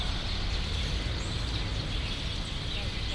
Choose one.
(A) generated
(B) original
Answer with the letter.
B